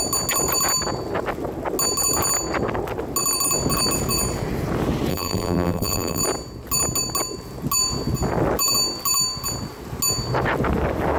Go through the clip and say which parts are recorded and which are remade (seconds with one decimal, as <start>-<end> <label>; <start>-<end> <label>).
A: 0.0-5.1 recorded; 5.1-6.2 remade; 6.2-11.2 recorded

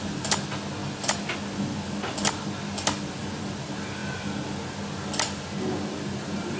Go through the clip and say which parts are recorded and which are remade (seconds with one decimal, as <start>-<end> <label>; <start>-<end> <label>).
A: 0.0-6.6 recorded